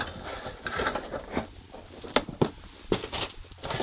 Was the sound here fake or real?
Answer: real